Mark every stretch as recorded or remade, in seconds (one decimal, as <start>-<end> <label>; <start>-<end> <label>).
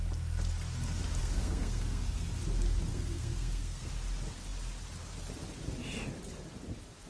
0.0-1.2 recorded; 1.2-2.3 remade; 2.3-2.9 recorded; 2.9-3.9 remade; 3.9-7.1 recorded